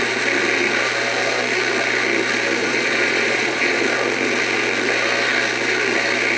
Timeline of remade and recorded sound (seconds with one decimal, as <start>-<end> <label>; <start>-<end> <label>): 0.0-2.6 recorded; 2.6-3.8 remade; 3.8-6.4 recorded

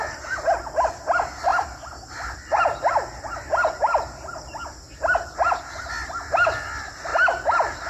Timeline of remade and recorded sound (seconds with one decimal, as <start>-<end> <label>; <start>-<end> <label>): 0.0-7.9 recorded

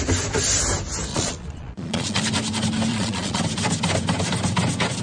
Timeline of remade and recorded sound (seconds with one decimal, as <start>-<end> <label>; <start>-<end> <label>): 0.0-1.1 recorded; 1.1-2.2 remade; 2.2-2.9 recorded; 2.9-3.4 remade; 3.4-5.0 recorded

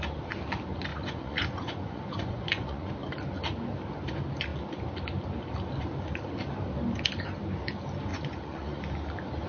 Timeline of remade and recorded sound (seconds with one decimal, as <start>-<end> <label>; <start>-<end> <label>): 0.0-0.9 recorded; 0.9-2.9 remade; 2.9-8.1 recorded; 8.1-8.8 remade; 8.8-9.5 recorded

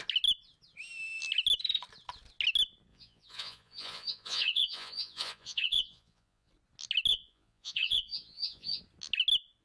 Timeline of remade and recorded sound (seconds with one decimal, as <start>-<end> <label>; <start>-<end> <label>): 0.0-2.9 recorded; 2.9-6.5 remade; 6.5-7.1 recorded; 7.1-8.8 remade; 8.8-9.6 recorded